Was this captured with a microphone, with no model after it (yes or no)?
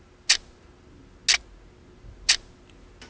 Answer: yes